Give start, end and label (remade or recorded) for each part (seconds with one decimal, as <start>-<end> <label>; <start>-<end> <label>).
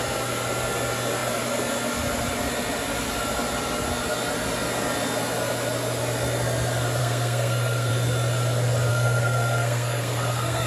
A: 0.0-7.0 recorded; 7.0-7.9 remade; 7.9-8.9 recorded; 8.9-10.7 remade